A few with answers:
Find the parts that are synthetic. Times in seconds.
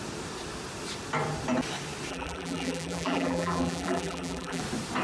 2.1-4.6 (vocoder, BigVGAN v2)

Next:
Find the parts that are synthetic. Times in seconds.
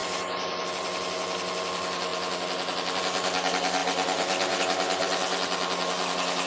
none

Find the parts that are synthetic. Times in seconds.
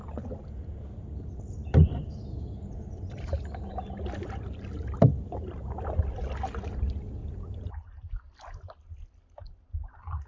1.6-3.7 (vocoder, BigVGAN v2); 7.2-7.7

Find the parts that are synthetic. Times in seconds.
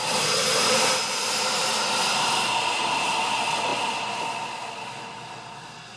0.0-3.2 (vocoder, BigVGAN v2)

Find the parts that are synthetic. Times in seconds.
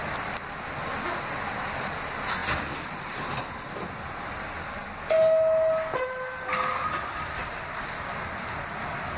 none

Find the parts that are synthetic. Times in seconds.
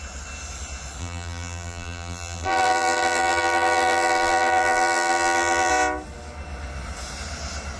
1.0-5.7 (vocoder, BigVGAN v2)